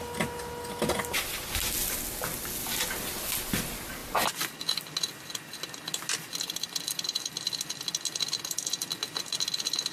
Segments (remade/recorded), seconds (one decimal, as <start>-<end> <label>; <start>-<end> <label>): 0.0-9.9 recorded